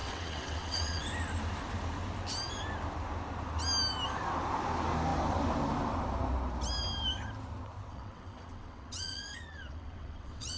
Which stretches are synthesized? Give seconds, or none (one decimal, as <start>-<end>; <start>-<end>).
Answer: 0.0-1.0; 7.9-10.6